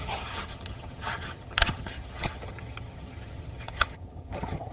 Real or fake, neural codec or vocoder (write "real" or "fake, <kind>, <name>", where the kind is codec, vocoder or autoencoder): fake, vocoder, HiFi-GAN